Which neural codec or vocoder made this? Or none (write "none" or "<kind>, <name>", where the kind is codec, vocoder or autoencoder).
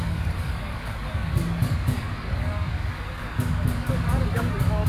codec, DAC